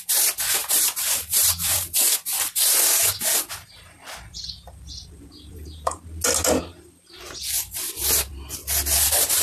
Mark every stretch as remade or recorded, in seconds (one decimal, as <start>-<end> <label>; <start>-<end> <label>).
0.0-0.6 recorded; 0.6-2.0 remade; 2.0-5.5 recorded; 5.5-6.0 remade; 6.0-9.4 recorded